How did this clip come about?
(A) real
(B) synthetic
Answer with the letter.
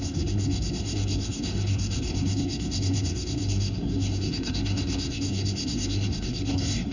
B